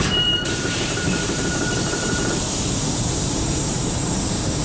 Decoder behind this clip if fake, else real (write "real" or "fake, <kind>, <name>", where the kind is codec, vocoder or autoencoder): fake, vocoder, BigVGAN v2